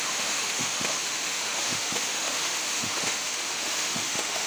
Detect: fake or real fake